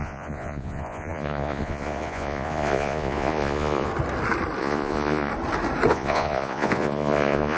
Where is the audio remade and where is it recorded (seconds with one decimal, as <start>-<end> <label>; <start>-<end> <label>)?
0.0-3.9 remade; 3.9-4.6 recorded; 4.6-5.3 remade; 5.3-5.9 recorded; 5.9-7.6 remade